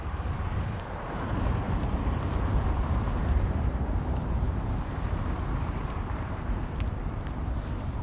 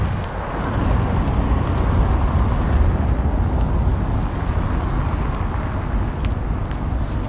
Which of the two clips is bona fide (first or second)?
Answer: second